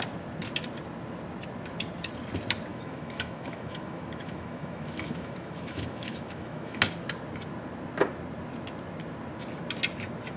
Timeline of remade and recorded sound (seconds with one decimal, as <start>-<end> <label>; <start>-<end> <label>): 0.0-2.7 recorded; 2.7-6.8 remade; 6.8-10.4 recorded